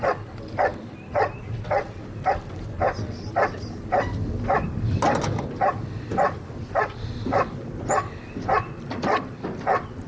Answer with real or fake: real